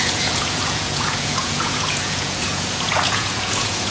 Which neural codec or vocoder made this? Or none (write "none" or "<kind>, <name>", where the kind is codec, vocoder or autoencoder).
vocoder, Vocos